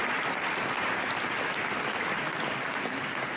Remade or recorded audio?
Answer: recorded